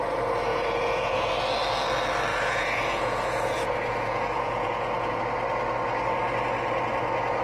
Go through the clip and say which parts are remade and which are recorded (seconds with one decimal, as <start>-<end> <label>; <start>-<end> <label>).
0.0-0.5 recorded; 0.5-1.3 remade; 1.3-2.3 recorded; 2.3-5.2 remade; 5.2-7.4 recorded